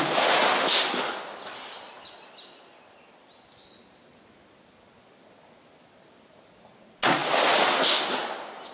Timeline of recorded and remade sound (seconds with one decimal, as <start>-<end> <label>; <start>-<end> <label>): 0.0-8.7 recorded